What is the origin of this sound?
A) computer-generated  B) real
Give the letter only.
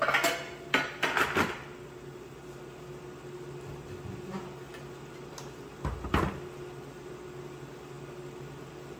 B